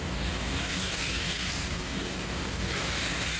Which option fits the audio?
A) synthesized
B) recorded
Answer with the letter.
A